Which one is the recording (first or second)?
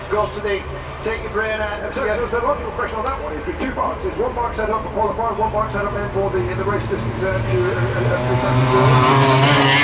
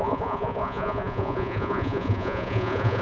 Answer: first